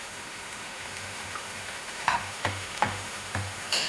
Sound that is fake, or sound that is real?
fake